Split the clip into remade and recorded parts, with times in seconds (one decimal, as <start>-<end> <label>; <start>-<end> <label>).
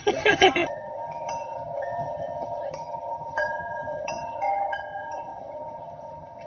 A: 0.0-6.5 remade